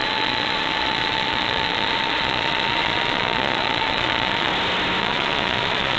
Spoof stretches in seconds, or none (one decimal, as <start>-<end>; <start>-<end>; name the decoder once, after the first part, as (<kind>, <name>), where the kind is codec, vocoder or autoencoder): 0.0-4.5 (vocoder, Vocos); 5.0-6.0